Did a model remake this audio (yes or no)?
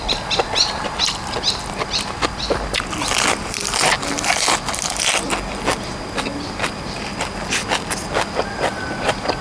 no